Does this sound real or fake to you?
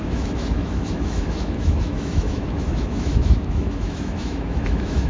fake